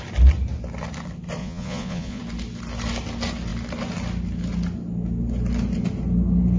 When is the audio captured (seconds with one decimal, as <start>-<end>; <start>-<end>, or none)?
0.0-1.4; 2.2-6.6